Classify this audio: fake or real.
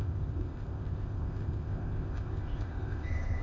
fake